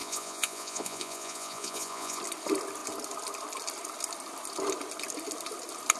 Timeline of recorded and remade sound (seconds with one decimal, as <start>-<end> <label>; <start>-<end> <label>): 0.0-2.2 remade; 2.2-6.0 recorded